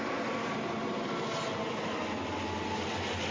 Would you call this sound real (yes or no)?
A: yes